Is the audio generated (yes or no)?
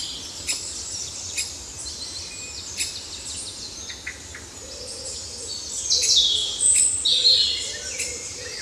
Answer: no